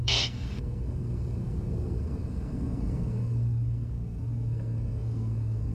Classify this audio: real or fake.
fake